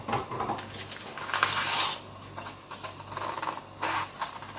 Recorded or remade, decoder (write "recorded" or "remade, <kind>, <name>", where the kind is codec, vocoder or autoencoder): recorded